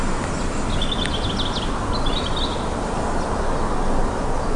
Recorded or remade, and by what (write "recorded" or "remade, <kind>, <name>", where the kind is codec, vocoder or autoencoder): recorded